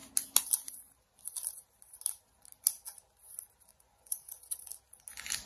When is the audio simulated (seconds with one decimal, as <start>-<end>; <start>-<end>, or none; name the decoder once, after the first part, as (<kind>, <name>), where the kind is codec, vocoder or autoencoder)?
3.7-4.7 (vocoder, Vocos)